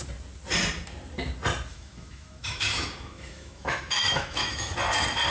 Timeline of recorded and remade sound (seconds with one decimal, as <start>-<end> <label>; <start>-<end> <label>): 0.0-1.7 recorded; 1.7-4.7 remade; 4.7-5.3 recorded